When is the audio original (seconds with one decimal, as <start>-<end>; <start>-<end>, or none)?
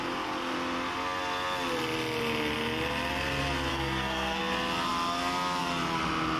0.0-3.7; 4.4-6.4